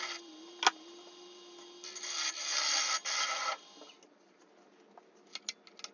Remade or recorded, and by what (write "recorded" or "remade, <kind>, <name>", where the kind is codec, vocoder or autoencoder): recorded